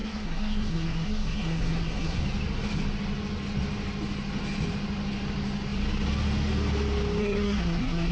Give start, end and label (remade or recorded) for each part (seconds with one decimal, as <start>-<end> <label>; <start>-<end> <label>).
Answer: 0.0-2.2 remade; 2.2-7.2 recorded; 7.2-8.1 remade